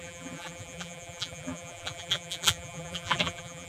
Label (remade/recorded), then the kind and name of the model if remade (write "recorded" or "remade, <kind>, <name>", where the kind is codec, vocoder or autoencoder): remade, vocoder, BigVGAN v2